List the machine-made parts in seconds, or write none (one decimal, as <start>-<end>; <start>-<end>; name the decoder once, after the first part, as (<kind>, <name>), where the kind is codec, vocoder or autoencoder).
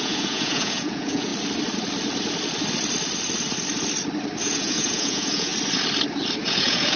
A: 0.0-1.3 (vocoder, Vocos); 4.4-5.5; 6.4-7.0